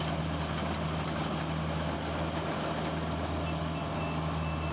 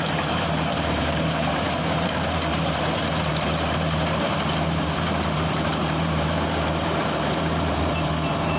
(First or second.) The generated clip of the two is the second